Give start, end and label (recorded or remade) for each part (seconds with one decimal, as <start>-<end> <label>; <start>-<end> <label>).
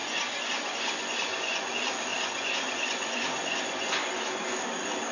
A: 0.0-1.7 remade; 1.7-2.1 recorded; 2.1-4.6 remade; 4.6-5.1 recorded